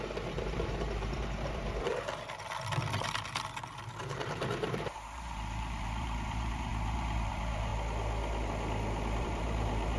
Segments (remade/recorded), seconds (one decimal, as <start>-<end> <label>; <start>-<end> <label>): 0.0-1.9 remade; 1.9-4.0 recorded; 4.0-7.7 remade; 7.7-9.2 recorded; 9.2-10.0 remade